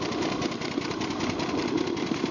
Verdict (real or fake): real